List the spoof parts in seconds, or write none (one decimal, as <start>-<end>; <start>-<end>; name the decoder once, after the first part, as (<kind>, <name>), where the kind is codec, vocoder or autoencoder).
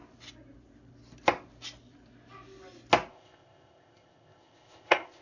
3.1-5.2 (codec, ZipCodec)